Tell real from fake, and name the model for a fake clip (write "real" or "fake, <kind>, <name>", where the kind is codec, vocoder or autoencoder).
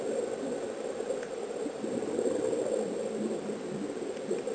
real